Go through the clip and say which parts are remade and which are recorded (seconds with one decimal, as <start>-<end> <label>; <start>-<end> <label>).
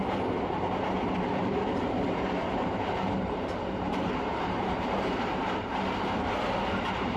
0.0-1.4 recorded; 1.4-5.7 remade; 5.7-7.2 recorded